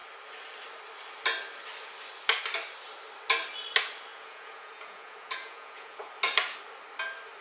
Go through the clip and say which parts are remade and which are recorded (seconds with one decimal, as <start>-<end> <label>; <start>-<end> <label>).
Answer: 0.0-4.1 recorded; 4.1-6.1 remade; 6.1-7.4 recorded